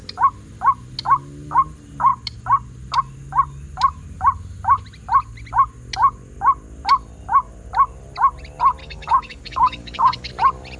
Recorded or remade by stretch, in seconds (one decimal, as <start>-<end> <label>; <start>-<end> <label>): 0.0-8.8 recorded; 8.8-10.3 remade; 10.3-10.8 recorded